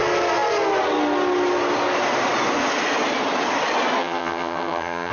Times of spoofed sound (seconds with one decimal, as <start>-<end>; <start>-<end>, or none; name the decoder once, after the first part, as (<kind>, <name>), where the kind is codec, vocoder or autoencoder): 4.0-5.1 (vocoder, HiFi-GAN)